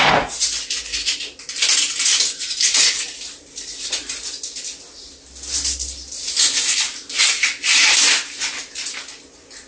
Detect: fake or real real